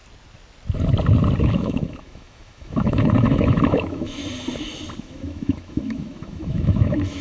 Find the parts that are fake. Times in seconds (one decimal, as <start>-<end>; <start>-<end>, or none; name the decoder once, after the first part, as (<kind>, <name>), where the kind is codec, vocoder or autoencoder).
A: 1.4-4.2 (autoencoder, DAC-VAE); 5.0-7.2